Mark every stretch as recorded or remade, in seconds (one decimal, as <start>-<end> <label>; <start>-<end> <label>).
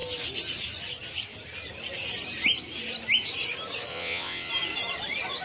0.0-3.9 recorded; 3.9-4.5 remade; 4.5-5.4 recorded